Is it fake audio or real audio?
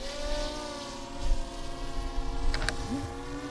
real